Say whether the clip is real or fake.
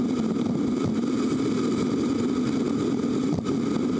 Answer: real